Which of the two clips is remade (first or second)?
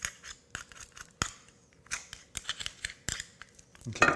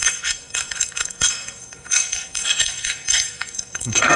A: second